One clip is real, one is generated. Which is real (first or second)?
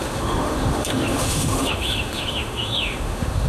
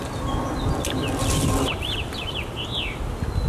second